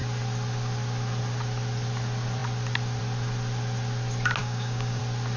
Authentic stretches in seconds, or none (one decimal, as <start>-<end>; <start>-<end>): 0.0-4.4; 5.0-5.4